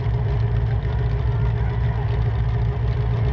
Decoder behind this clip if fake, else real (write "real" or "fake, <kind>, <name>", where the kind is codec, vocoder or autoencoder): real